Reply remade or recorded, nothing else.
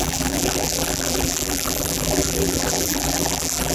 remade